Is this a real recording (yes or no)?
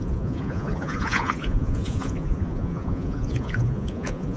no